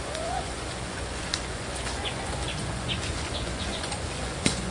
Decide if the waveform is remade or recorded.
remade